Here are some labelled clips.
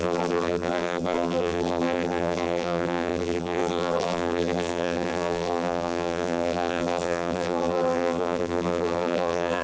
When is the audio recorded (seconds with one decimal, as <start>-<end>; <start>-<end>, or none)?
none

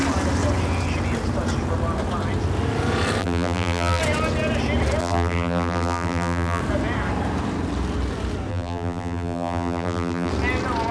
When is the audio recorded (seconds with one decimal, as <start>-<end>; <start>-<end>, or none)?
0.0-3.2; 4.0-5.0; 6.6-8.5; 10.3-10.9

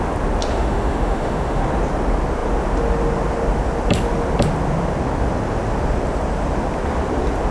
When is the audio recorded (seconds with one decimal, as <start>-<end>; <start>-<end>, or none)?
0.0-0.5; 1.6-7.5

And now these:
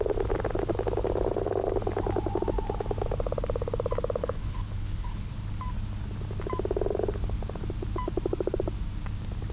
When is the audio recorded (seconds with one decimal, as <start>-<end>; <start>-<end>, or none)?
0.0-4.2; 5.3-9.5

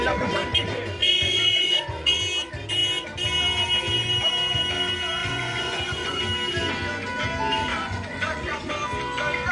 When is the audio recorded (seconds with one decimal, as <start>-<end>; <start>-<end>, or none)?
0.0-1.0; 2.2-5.2; 6.2-7.7; 8.7-9.5

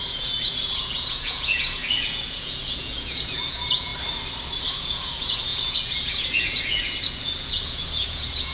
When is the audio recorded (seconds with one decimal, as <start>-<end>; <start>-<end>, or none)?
3.9-4.7